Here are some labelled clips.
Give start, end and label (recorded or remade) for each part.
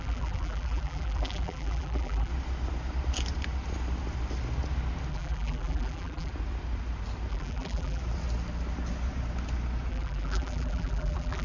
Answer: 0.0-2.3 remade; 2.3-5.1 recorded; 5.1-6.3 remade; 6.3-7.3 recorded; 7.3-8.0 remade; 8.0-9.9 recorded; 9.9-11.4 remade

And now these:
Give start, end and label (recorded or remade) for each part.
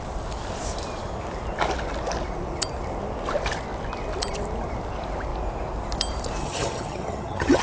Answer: 0.0-6.4 recorded; 6.4-7.6 remade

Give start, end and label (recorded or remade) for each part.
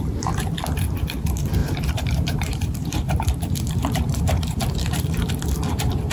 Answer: 0.0-1.6 recorded; 1.6-5.3 remade; 5.3-6.1 recorded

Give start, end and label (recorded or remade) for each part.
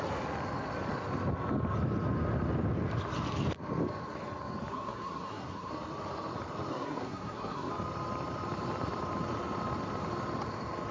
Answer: 0.0-4.7 recorded; 4.7-5.7 remade; 5.7-6.7 recorded; 6.7-7.7 remade; 7.7-10.9 recorded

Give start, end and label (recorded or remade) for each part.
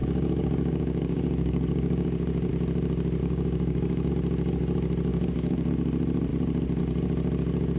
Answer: 0.0-2.5 remade; 2.5-3.2 recorded; 3.2-4.1 remade; 4.1-5.1 recorded; 5.1-5.7 remade; 5.7-7.8 recorded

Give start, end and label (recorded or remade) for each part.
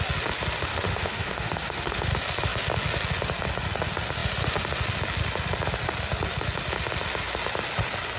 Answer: 0.0-0.7 recorded; 0.7-2.1 remade; 2.1-8.2 recorded